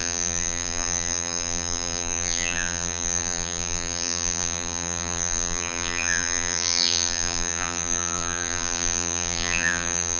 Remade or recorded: remade